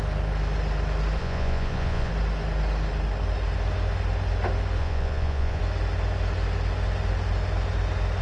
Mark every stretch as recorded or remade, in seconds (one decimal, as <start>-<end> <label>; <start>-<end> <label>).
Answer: 0.0-1.2 recorded; 1.2-2.1 remade; 2.1-4.8 recorded; 4.8-5.6 remade; 5.6-8.2 recorded